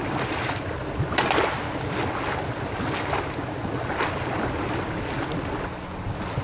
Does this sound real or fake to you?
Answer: real